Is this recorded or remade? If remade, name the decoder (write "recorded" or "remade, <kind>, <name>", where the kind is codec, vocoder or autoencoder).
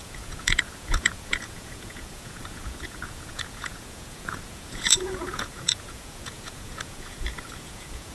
remade, vocoder, Vocos